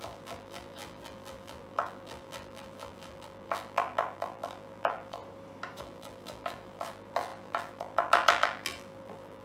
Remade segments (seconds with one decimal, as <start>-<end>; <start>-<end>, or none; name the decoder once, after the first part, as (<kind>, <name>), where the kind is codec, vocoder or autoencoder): 0.0-5.2 (vocoder, BigVGAN v2); 5.8-9.4